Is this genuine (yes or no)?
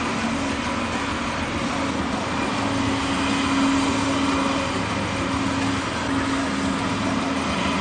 yes